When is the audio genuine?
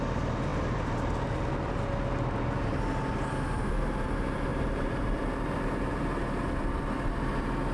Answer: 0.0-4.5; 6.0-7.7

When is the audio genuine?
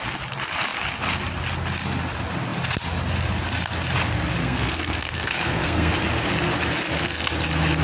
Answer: 0.0-4.4; 5.9-7.8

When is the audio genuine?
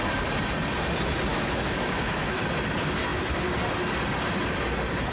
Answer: 0.0-1.3; 2.4-5.1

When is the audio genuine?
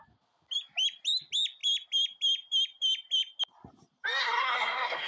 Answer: 0.0-4.2